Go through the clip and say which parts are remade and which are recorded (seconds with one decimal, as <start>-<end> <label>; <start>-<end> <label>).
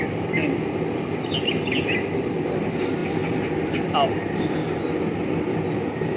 0.0-6.2 recorded